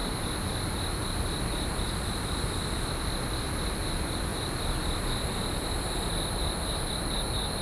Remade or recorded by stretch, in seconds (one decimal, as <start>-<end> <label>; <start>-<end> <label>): 0.0-7.6 recorded